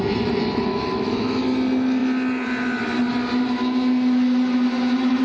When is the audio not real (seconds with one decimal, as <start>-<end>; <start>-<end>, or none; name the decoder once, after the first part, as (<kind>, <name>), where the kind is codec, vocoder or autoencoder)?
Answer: 0.7-1.4 (autoencoder, DAC-VAE)